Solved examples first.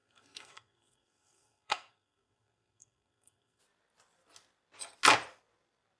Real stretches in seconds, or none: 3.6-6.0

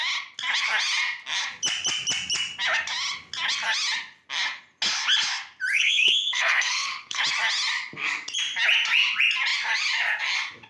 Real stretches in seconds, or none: 0.0-5.7; 7.2-10.7